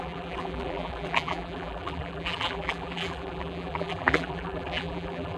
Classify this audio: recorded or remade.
remade